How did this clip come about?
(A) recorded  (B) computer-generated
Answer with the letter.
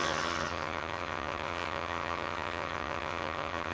B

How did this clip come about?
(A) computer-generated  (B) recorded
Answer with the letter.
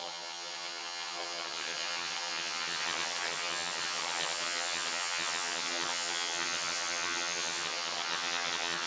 A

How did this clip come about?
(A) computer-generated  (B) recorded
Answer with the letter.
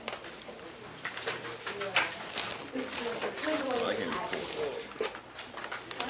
B